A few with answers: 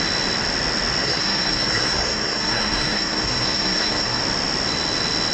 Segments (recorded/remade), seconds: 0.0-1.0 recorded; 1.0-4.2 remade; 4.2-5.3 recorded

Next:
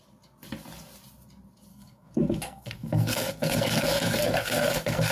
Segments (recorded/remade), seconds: 0.0-1.7 recorded; 1.7-5.1 remade

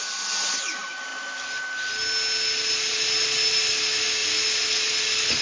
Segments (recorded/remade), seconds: 0.0-5.4 recorded

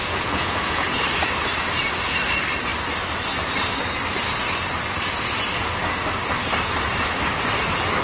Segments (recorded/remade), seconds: 0.0-1.0 remade; 1.0-8.0 recorded

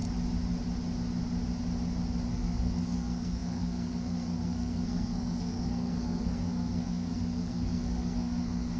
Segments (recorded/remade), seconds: 0.0-2.3 recorded; 2.3-8.8 remade

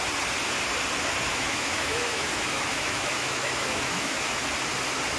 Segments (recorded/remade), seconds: 0.0-1.3 recorded; 1.3-4.4 remade; 4.4-5.2 recorded

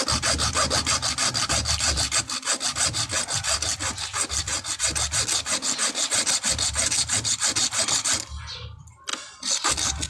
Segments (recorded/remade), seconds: 0.0-10.1 recorded